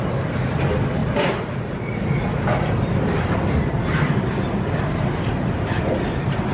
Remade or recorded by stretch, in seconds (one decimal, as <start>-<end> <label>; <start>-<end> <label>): 0.0-1.0 recorded; 1.0-3.7 remade; 3.7-6.5 recorded